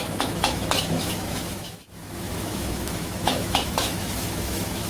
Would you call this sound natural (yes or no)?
no